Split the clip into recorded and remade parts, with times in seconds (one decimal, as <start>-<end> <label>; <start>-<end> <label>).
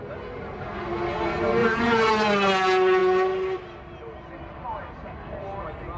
0.0-1.6 recorded; 1.6-2.1 remade; 2.1-6.0 recorded